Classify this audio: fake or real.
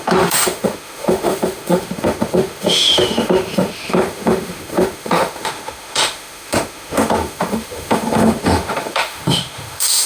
fake